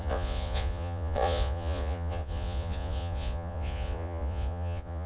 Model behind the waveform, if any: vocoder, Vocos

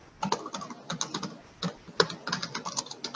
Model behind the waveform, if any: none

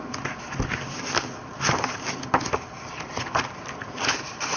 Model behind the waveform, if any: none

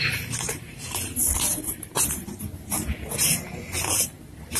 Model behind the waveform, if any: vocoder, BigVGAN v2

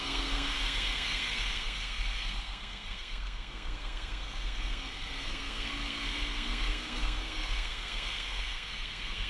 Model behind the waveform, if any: codec, SNAC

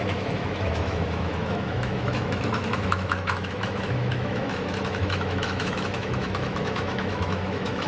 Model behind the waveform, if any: autoencoder, DAC-VAE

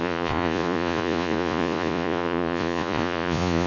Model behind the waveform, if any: vocoder, Vocos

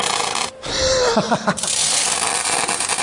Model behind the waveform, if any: none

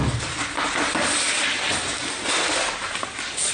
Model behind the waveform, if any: none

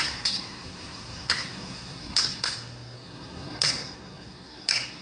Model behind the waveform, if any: codec, SNAC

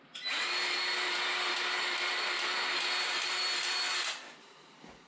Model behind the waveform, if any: none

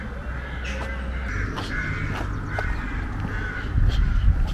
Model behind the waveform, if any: none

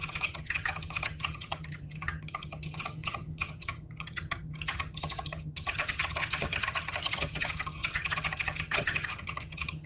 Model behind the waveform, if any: vocoder, HiFi-GAN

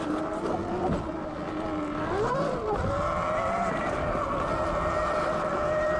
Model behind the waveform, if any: none